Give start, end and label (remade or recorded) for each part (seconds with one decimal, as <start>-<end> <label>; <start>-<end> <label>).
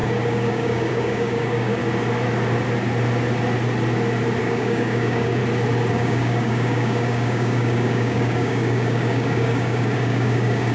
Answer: 0.0-1.8 remade; 1.8-4.4 recorded; 4.4-5.4 remade; 5.4-5.9 recorded; 5.9-10.7 remade